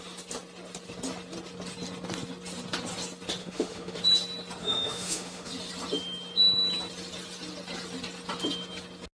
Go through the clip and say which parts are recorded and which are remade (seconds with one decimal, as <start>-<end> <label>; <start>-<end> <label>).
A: 0.0-3.4 recorded; 3.4-4.0 remade; 4.0-4.6 recorded; 4.6-5.5 remade; 5.5-9.2 recorded